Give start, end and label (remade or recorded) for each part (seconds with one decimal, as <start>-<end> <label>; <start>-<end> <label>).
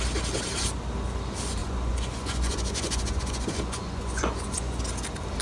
0.0-1.6 recorded; 1.6-4.8 remade; 4.8-5.4 recorded